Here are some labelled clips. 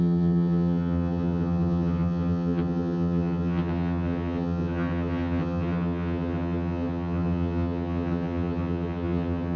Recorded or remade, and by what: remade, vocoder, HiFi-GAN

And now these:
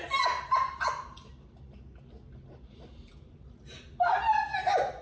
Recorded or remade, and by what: recorded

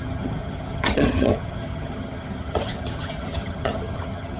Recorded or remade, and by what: remade, vocoder, HiFi-GAN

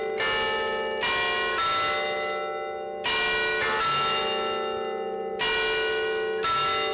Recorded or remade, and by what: recorded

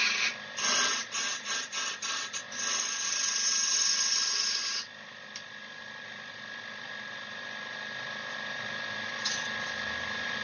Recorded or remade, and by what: recorded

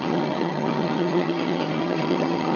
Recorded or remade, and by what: remade, vocoder, HiFi-GAN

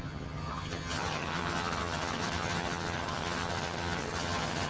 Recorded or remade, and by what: remade, vocoder, HiFi-GAN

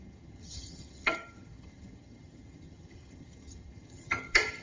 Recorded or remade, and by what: remade, vocoder, HiFi-GAN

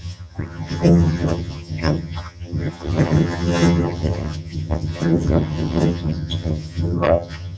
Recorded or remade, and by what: remade, vocoder, HiFi-GAN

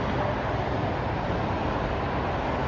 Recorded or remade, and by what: recorded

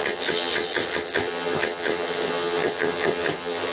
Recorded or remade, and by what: remade, vocoder, HiFi-GAN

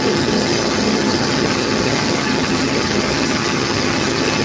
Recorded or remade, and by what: remade, vocoder, HiFi-GAN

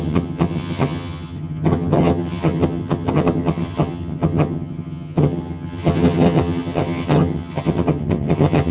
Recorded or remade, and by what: remade, vocoder, HiFi-GAN